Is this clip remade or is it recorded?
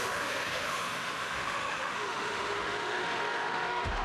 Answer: remade